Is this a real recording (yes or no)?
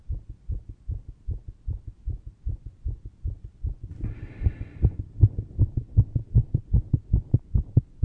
yes